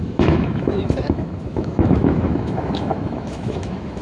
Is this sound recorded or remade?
remade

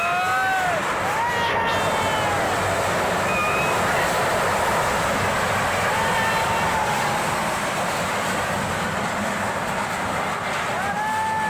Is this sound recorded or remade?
recorded